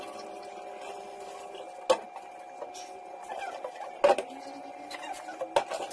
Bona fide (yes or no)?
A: yes